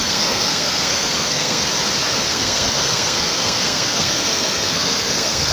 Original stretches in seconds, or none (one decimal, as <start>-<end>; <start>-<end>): 1.7-2.3